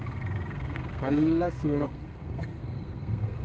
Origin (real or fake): fake